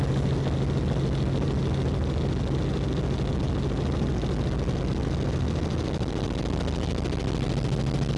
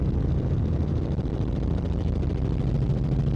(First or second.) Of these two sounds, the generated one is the second